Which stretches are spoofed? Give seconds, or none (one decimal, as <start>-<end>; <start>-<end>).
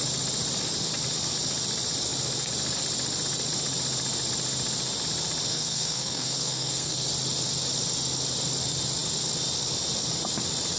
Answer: 5.5-7.1